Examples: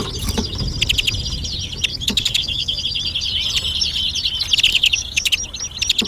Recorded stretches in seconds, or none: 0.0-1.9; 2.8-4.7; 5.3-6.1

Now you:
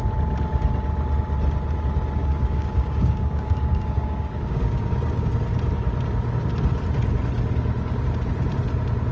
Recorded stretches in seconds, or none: 0.0-2.2; 5.3-9.1

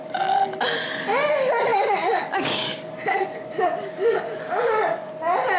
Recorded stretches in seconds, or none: 0.0-1.7; 5.1-5.6

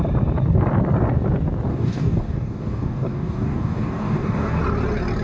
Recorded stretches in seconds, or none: 0.0-1.7; 4.6-5.2

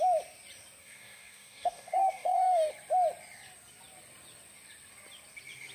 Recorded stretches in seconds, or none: 0.0-0.8; 2.7-5.7

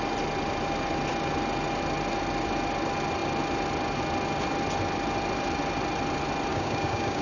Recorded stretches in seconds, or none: 0.0-6.5